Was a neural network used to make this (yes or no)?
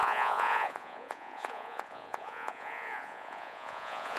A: yes